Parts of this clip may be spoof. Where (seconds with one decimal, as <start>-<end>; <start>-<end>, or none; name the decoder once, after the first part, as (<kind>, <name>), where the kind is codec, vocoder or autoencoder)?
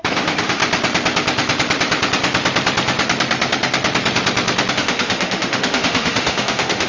0.0-0.6 (autoencoder, DAC-VAE); 4.7-6.9